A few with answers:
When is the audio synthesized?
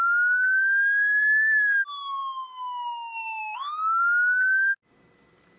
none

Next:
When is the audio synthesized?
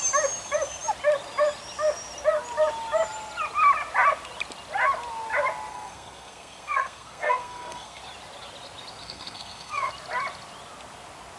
5.7-8.0 (codec, SNAC); 9.0-9.9